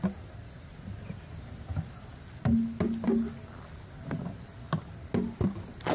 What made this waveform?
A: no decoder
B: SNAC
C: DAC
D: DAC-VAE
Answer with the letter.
A